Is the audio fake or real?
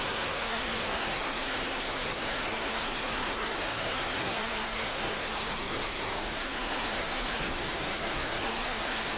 fake